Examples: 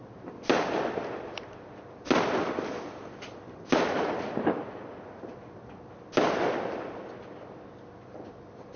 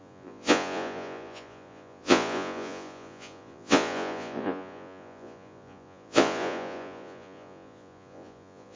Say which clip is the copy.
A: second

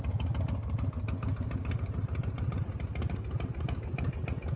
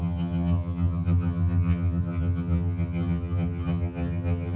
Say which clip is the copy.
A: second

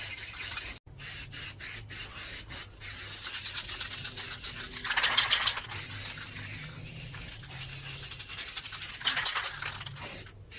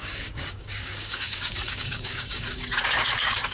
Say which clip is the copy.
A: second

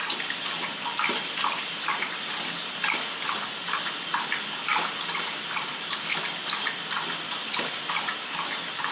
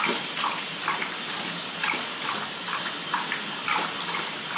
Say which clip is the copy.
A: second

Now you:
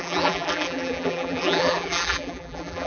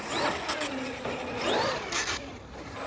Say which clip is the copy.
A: first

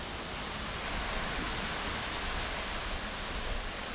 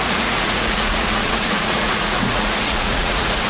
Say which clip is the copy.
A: second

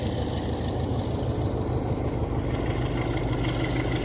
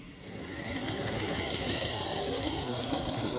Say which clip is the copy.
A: second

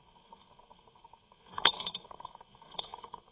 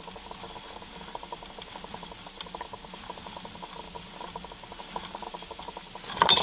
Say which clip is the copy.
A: first